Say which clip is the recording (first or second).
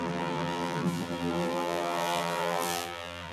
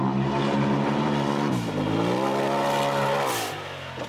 second